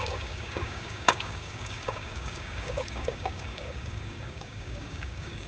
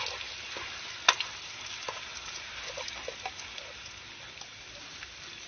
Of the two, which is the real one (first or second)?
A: second